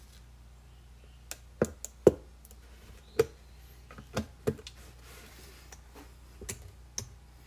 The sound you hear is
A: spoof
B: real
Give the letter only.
B